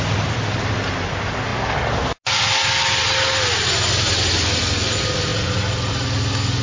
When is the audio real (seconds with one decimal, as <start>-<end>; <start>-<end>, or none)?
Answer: 0.0-6.6